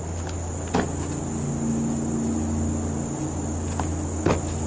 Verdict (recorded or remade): recorded